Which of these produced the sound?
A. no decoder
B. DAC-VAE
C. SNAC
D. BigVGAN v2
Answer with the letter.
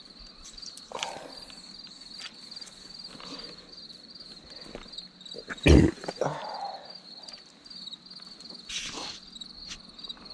A